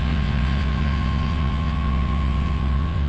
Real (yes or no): no